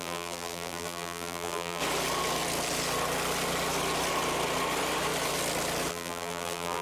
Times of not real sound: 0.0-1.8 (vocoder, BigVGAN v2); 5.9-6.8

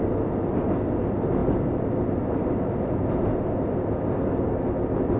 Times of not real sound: none

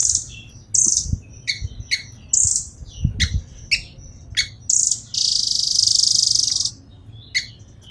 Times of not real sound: none

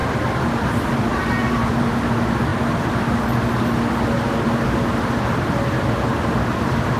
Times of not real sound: none

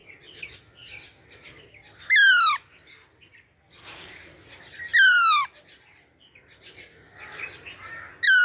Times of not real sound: none

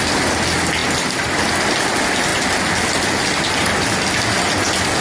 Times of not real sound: 0.8-1.5 (vocoder, BigVGAN v2); 2.3-3.5

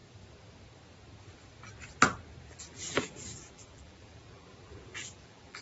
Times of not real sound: 2.5-5.6 (vocoder, BigVGAN v2)